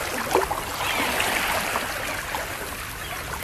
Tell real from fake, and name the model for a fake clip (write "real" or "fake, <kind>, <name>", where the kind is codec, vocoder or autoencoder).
real